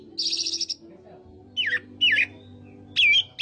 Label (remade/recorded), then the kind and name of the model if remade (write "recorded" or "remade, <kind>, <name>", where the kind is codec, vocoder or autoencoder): recorded